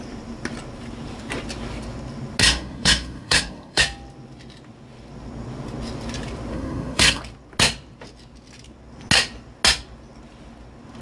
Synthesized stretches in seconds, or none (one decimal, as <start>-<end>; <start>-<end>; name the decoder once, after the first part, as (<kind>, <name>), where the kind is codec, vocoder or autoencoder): 2.4-3.8 (codec, SNAC); 6.5-7.2